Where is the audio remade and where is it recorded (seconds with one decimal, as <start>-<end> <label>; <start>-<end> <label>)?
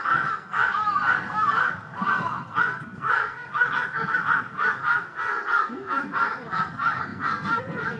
0.0-8.0 remade